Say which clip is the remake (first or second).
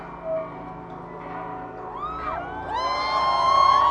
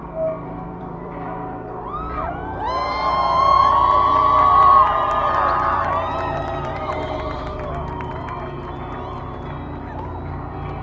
second